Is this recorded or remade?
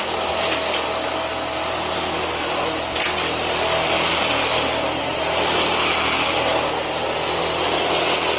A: recorded